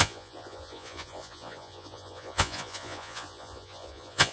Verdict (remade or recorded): remade